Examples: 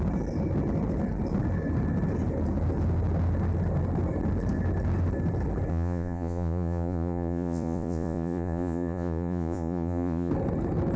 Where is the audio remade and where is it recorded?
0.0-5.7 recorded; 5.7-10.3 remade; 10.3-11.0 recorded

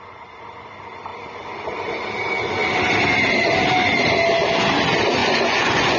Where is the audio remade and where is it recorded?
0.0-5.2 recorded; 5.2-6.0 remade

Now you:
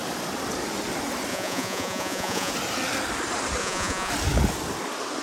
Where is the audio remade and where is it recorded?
0.0-1.3 recorded; 1.3-2.5 remade; 2.5-3.6 recorded; 3.6-4.1 remade; 4.1-5.2 recorded

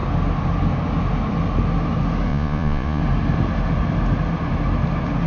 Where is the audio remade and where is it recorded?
0.0-2.3 recorded; 2.3-3.0 remade; 3.0-5.3 recorded

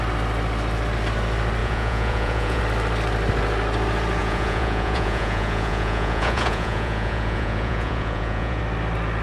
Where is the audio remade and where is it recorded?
0.0-1.6 recorded; 1.6-2.6 remade; 2.6-4.2 recorded; 4.2-8.6 remade; 8.6-9.2 recorded

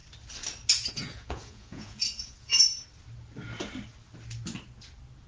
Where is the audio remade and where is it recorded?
0.0-0.9 recorded; 0.9-2.8 remade; 2.8-5.3 recorded

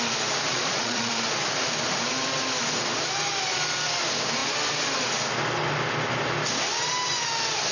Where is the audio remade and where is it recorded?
0.0-0.5 recorded; 0.5-1.1 remade; 1.1-7.7 recorded